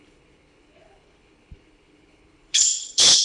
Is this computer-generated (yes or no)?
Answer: yes